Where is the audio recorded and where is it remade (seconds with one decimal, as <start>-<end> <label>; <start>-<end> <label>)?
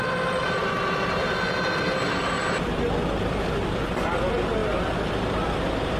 0.0-6.0 recorded